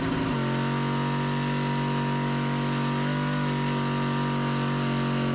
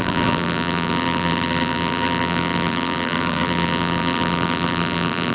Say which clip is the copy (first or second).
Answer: second